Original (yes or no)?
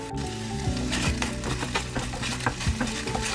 yes